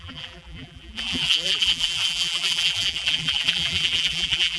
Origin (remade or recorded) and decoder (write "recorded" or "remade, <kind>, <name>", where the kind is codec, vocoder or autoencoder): remade, vocoder, BigVGAN v2